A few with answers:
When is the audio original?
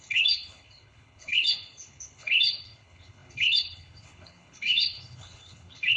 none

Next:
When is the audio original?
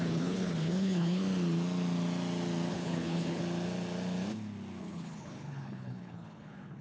1.2-2.7; 3.4-4.8